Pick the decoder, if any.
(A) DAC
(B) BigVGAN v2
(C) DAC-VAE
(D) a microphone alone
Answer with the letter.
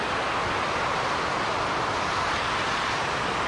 D